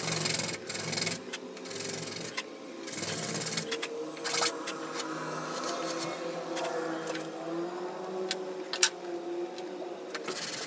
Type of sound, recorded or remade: recorded